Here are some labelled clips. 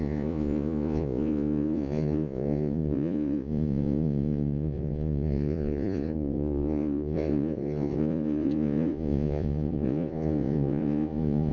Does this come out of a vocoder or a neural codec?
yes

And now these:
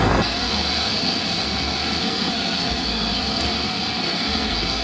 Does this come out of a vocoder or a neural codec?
yes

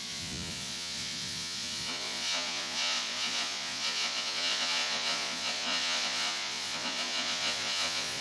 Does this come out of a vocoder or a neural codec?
yes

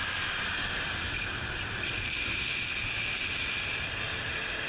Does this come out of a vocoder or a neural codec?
no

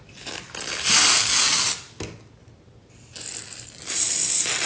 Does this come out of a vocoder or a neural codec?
no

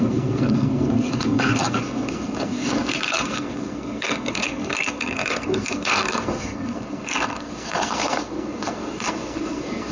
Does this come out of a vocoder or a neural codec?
yes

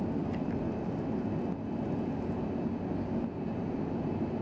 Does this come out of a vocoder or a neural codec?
no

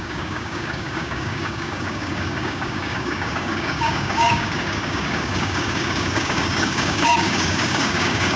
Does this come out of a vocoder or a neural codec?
yes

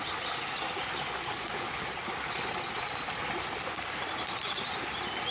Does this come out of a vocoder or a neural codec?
no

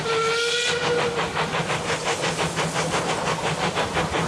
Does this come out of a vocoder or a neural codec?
no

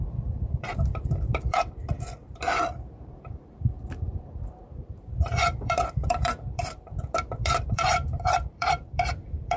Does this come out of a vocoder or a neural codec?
yes